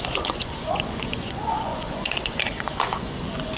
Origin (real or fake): fake